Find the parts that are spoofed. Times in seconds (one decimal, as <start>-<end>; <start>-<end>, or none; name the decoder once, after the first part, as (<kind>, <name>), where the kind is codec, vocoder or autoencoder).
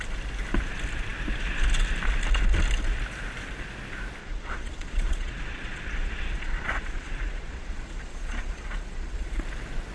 4.2-9.4 (vocoder, Vocos)